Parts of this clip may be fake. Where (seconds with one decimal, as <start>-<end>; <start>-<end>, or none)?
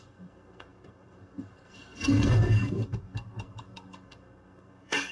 0.0-5.1